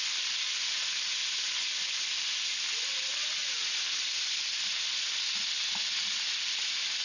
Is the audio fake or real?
real